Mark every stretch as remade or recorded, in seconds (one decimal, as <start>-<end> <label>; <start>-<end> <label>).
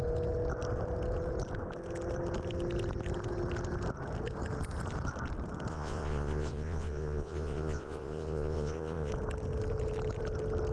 0.0-5.7 recorded; 5.7-9.1 remade; 9.1-10.7 recorded